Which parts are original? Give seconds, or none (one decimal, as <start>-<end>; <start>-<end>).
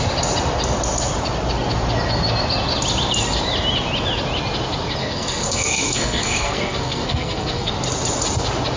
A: 0.0-5.0; 7.7-8.8